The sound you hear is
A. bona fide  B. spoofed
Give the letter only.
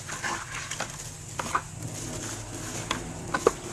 A